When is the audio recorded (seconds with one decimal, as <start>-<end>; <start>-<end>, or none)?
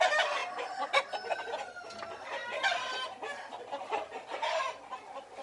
0.0-5.4